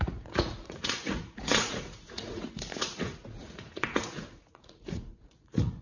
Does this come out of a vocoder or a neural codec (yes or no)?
yes